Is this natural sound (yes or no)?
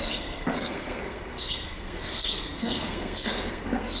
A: no